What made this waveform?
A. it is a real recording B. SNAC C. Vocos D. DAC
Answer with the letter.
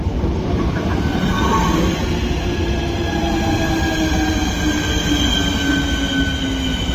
A